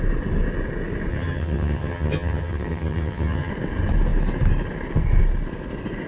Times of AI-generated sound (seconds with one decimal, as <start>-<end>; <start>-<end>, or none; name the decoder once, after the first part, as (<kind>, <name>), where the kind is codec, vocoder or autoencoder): 1.1-3.5 (vocoder, HiFi-GAN)